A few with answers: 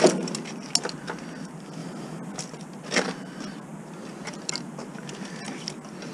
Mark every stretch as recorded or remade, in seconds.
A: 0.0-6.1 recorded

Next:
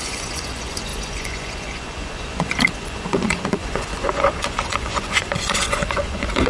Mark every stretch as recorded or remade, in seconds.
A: 0.0-6.5 remade